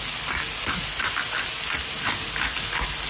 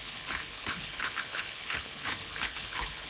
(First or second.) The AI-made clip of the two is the second